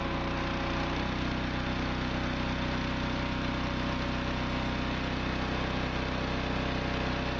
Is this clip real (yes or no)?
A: yes